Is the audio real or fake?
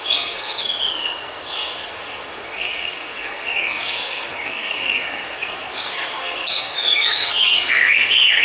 fake